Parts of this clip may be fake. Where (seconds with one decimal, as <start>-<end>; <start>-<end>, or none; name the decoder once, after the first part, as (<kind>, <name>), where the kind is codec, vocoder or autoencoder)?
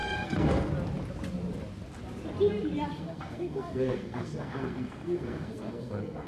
0.0-0.7 (codec, SNAC); 2.9-6.3